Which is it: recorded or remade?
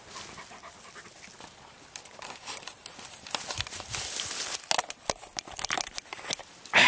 recorded